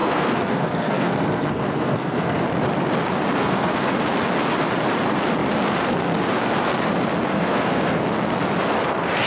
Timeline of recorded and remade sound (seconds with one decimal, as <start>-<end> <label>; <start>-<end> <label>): 0.0-2.4 remade; 2.4-3.4 recorded; 3.4-3.9 remade; 3.9-7.3 recorded; 7.3-8.0 remade; 8.0-9.3 recorded